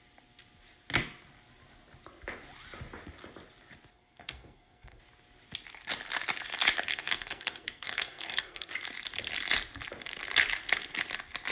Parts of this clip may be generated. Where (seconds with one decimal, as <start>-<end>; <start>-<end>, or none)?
3.9-5.0; 6.9-8.7